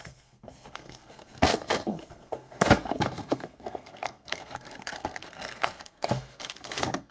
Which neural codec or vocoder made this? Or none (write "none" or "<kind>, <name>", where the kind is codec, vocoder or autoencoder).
codec, SNAC